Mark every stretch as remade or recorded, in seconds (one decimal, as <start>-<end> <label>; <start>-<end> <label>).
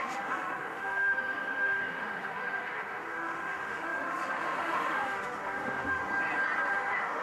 0.0-6.0 remade; 6.0-6.7 recorded; 6.7-7.2 remade